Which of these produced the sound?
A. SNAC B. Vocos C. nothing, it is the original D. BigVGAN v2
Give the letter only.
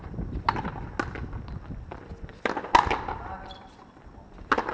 C